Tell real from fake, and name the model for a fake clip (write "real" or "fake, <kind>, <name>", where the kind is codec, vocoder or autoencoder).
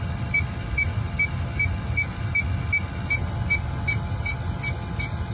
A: real